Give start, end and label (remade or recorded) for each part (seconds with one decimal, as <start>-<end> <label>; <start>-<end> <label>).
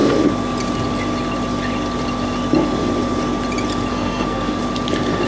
0.0-3.9 recorded; 3.9-4.6 remade; 4.6-5.3 recorded